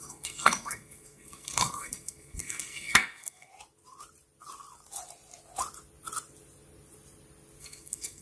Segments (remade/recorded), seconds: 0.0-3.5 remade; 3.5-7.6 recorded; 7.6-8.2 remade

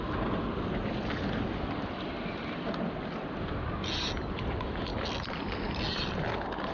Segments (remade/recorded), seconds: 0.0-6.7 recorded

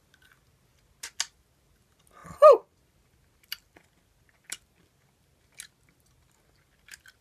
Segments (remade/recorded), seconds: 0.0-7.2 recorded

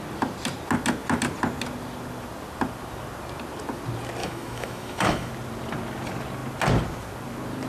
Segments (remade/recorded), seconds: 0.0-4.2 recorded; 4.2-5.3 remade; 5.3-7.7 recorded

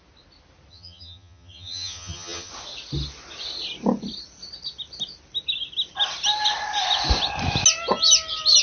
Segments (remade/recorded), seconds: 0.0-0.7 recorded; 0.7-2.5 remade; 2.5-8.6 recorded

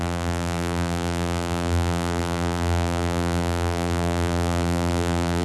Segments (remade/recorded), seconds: 0.0-5.4 remade

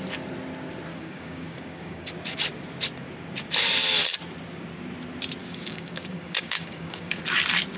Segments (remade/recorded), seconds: 0.0-0.9 recorded; 0.9-2.1 remade; 2.1-5.4 recorded; 5.4-7.2 remade; 7.2-7.8 recorded